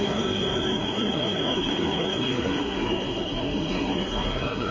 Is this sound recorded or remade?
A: remade